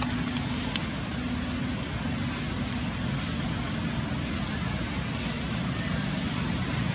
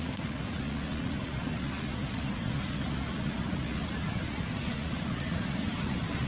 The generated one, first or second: second